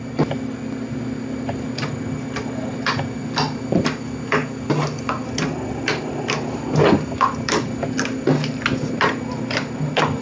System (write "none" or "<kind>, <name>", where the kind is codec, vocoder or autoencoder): none